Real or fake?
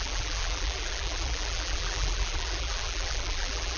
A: fake